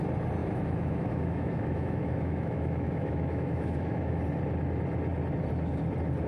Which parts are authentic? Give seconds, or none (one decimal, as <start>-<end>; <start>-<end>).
0.0-0.4; 4.2-6.3

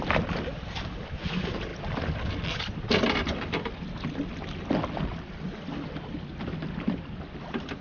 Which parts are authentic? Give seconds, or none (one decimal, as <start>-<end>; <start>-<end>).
0.0-7.8

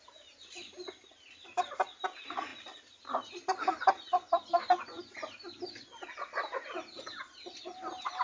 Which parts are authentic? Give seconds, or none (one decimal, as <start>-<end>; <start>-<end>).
0.0-8.2

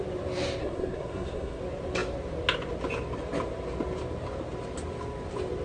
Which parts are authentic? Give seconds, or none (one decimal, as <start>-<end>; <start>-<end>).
0.0-0.6; 1.6-5.6

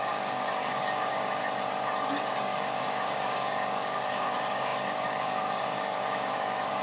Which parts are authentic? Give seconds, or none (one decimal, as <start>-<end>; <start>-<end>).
1.4-2.3

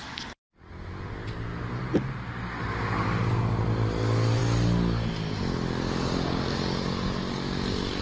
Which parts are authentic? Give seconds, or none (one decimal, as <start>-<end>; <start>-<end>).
0.0-8.0

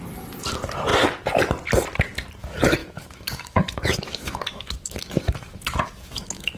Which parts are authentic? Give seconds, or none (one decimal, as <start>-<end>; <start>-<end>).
0.0-2.8

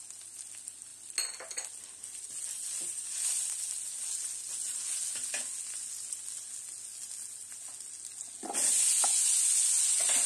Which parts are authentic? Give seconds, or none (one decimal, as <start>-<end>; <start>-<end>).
0.0-10.3